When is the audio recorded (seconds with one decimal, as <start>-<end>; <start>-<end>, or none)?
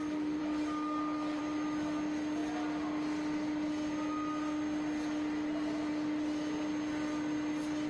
0.0-0.4; 1.4-7.9